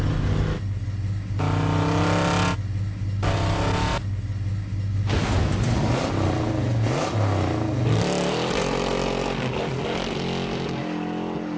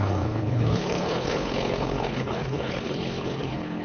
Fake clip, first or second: second